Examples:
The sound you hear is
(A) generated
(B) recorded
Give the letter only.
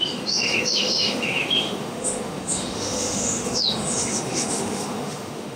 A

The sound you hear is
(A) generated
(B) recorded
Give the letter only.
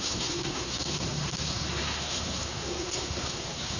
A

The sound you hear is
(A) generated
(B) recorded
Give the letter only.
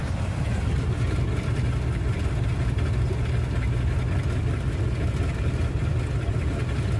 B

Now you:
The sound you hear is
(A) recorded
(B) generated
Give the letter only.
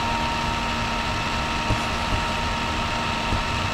A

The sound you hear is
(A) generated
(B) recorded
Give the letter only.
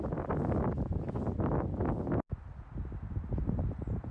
B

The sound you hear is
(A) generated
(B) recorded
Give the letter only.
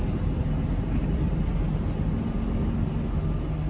B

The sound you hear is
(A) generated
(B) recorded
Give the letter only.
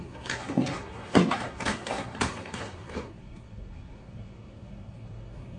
A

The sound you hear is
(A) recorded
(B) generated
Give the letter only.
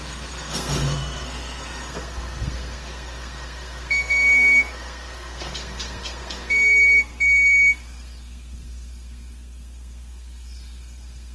B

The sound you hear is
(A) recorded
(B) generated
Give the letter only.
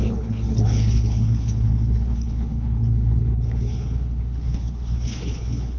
B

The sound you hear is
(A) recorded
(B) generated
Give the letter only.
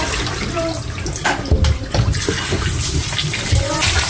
A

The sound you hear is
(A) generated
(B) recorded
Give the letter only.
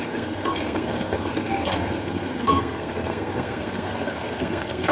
A